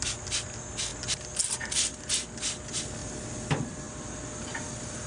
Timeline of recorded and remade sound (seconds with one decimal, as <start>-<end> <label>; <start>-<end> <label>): 0.0-5.1 recorded